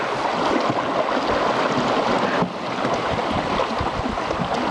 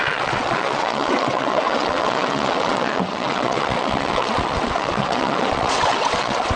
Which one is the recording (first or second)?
first